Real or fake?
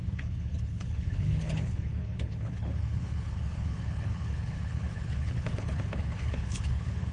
fake